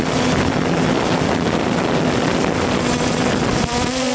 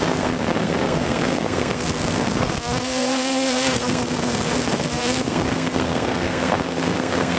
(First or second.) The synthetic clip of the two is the second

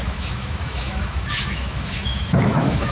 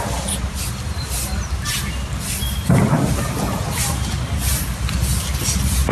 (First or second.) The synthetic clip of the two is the first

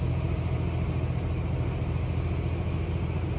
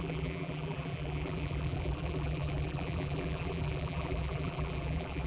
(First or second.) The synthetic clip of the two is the second